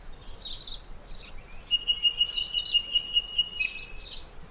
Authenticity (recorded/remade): recorded